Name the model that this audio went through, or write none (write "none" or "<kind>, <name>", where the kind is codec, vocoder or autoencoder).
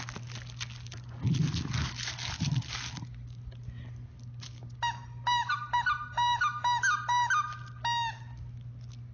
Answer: none